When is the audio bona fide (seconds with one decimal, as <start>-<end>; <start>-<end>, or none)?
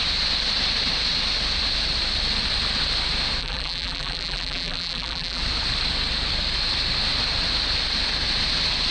0.0-3.4; 5.4-8.9